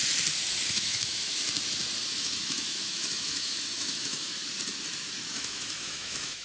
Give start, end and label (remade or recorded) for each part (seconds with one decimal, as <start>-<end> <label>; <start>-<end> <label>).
0.0-0.7 recorded; 0.7-1.3 remade; 1.3-2.2 recorded; 2.2-4.3 remade; 4.3-5.3 recorded; 5.3-6.4 remade